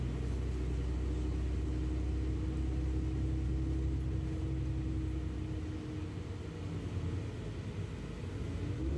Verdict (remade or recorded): recorded